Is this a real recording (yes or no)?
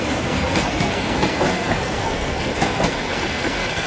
no